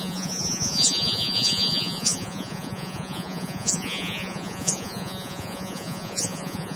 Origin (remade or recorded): remade